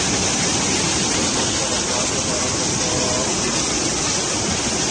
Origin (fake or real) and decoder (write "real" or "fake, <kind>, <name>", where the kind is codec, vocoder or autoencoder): real